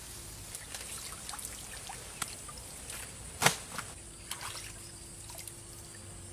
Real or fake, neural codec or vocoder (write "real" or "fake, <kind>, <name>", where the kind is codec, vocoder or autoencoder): real